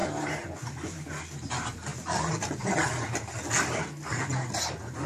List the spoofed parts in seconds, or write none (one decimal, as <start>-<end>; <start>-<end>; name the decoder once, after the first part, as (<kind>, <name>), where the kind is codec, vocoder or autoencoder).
none